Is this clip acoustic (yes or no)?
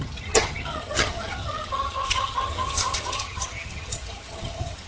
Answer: no